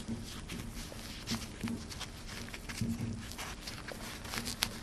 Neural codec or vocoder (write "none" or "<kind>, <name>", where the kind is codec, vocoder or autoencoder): none